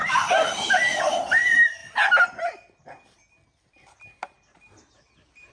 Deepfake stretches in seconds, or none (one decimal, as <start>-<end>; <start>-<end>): 0.7-1.8; 5.1-5.5